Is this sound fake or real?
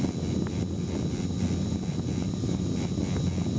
real